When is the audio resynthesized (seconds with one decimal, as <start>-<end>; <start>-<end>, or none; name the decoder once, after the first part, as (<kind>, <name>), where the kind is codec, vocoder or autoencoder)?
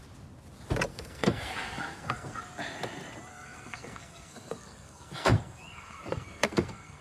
0.9-2.4 (codec, SNAC); 3.3-7.0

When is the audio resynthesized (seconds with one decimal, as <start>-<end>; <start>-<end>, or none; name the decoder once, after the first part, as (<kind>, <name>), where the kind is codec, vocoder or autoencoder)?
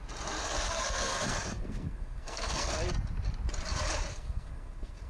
0.4-2.7 (codec, SNAC); 4.1-5.1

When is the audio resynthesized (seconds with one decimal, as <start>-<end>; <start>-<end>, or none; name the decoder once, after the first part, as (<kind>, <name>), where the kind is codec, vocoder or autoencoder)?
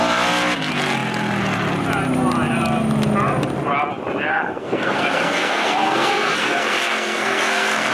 4.3-7.9 (codec, SNAC)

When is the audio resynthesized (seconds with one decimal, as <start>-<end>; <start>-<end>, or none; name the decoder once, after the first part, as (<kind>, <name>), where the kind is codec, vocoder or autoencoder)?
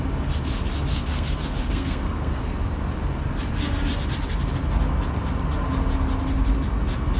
0.9-2.4 (codec, SNAC)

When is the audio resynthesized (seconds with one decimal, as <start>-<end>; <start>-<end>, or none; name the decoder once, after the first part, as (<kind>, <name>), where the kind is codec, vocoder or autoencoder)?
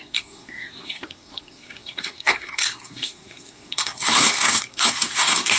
0.0-5.6 (codec, SNAC)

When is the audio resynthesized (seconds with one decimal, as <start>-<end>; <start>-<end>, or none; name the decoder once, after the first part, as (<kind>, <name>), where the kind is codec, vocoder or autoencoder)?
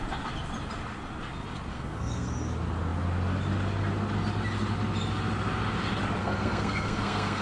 1.7-2.3 (codec, SNAC); 6.2-7.4